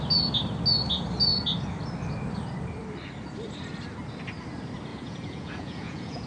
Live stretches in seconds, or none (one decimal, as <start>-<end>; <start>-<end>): 0.0-4.9